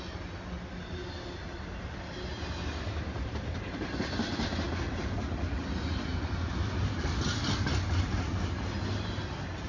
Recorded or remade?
recorded